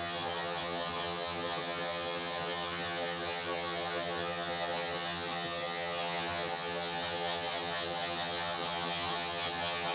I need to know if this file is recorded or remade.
remade